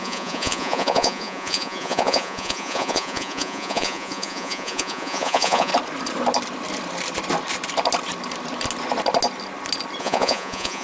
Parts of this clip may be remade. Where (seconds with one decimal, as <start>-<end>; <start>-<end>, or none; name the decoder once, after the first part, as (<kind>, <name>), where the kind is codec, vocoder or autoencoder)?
0.0-5.7 (vocoder, Vocos); 10.0-10.8

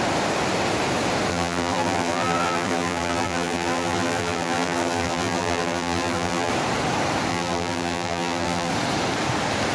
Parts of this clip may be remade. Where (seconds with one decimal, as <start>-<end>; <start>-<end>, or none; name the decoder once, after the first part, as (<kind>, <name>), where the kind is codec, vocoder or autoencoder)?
1.3-6.5 (vocoder, BigVGAN v2); 7.3-8.7

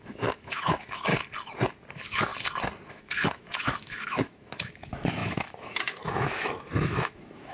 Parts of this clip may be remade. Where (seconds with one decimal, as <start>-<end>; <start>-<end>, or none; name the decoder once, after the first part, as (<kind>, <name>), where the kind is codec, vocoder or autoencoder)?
0.0-1.1 (autoencoder, DAC-VAE); 1.9-2.3; 2.9-7.5

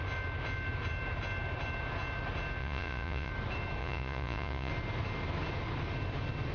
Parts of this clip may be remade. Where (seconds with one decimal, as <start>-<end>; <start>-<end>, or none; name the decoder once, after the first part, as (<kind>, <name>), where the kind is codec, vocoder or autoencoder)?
2.6-3.3 (vocoder, Vocos); 3.8-4.7

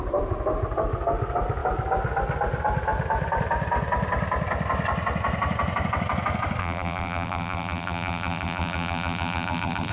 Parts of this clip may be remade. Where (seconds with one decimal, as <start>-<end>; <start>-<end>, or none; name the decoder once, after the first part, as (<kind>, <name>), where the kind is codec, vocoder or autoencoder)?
6.6-9.9 (vocoder, BigVGAN v2)